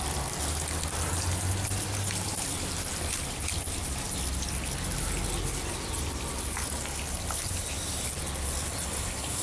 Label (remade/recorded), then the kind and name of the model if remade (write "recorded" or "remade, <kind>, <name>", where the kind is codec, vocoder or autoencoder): recorded